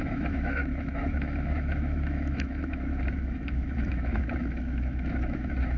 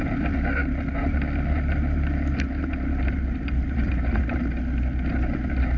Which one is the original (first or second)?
second